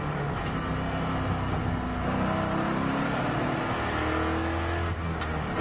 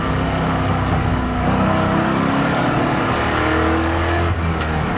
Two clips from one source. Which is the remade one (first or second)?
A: second